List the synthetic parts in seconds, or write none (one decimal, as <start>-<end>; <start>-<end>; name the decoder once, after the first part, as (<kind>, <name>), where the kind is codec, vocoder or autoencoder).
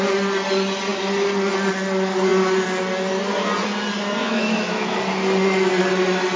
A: 4.2-5.0 (autoencoder, DAC-VAE)